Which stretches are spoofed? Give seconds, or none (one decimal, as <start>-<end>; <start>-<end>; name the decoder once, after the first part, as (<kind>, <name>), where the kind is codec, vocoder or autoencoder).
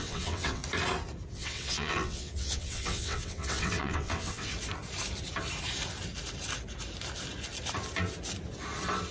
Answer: 0.0-0.6 (vocoder, WaveNeXt); 1.3-4.5